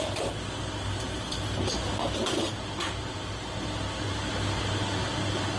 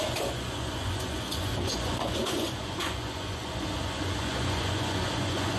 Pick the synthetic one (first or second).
second